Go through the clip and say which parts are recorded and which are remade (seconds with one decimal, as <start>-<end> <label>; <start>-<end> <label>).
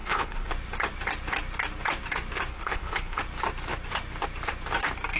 0.0-0.5 remade; 0.5-2.5 recorded; 2.5-3.2 remade; 3.2-5.2 recorded